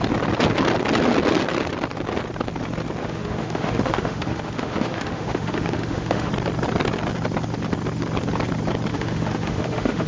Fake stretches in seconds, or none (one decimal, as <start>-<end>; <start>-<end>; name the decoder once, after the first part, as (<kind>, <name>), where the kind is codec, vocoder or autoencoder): 3.0-6.3 (autoencoder, DAC-VAE); 8.9-10.1